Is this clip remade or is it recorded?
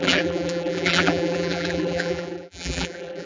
remade